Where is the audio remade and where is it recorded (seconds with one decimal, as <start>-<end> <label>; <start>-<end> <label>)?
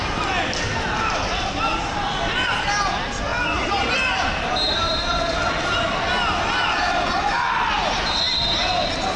0.0-9.2 recorded